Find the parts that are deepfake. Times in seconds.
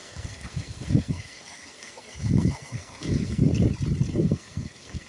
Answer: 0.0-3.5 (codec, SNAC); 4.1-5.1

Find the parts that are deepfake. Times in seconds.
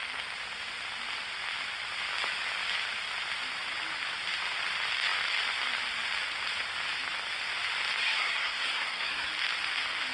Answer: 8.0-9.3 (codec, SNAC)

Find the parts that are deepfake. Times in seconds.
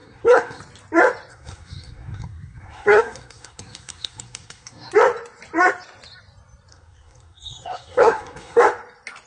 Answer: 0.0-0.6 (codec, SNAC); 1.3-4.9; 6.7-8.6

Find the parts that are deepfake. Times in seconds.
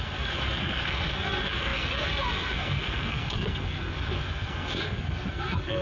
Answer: 0.0-5.8 (codec, SNAC)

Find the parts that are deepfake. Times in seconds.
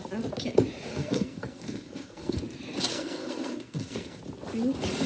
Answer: 0.9-2.4 (codec, SNAC); 2.9-4.2